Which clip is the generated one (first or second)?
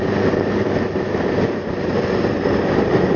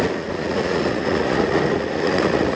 second